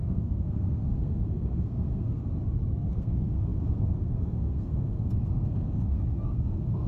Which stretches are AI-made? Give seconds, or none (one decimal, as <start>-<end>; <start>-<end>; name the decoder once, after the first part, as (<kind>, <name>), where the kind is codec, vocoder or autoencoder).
0.0-2.2 (codec, SNAC); 2.9-6.9